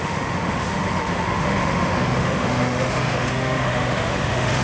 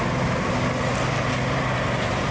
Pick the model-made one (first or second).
first